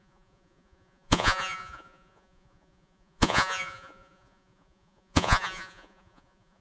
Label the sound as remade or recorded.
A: remade